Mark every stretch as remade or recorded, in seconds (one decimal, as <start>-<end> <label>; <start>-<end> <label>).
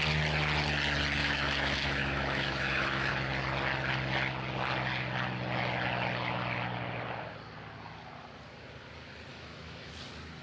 0.0-1.2 recorded; 1.2-3.1 remade; 3.1-9.3 recorded; 9.3-9.9 remade; 9.9-10.4 recorded